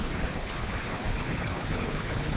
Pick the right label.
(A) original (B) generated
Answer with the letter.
B